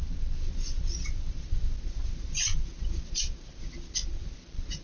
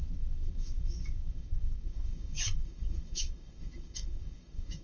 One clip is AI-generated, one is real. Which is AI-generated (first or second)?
second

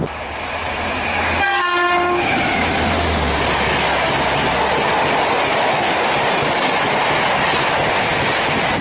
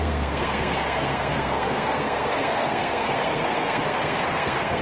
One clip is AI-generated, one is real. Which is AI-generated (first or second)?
second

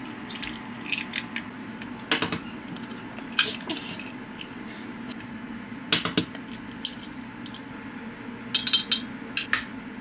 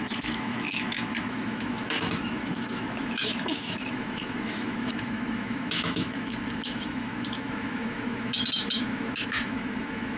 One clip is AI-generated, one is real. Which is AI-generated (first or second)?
second